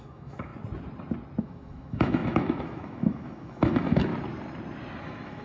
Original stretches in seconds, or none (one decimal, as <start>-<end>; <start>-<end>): 0.5-1.4; 4.1-5.0